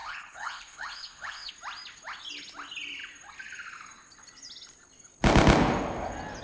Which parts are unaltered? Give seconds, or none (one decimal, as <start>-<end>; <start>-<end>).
1.5-6.4